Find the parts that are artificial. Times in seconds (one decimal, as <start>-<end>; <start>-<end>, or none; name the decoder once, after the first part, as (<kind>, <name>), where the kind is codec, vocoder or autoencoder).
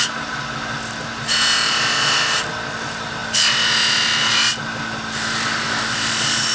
none